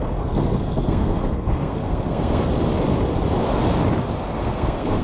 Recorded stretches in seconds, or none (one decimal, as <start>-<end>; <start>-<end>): 2.5-4.4